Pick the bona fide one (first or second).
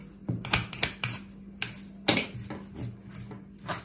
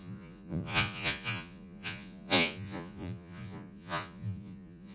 first